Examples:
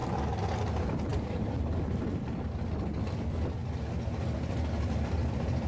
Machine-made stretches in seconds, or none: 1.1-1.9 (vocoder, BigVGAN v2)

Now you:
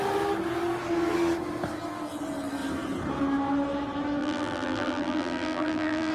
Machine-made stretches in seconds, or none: 4.2-6.1 (vocoder, BigVGAN v2)

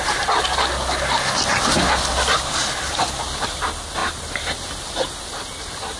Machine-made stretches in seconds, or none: none